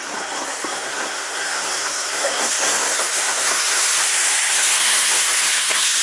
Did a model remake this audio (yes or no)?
yes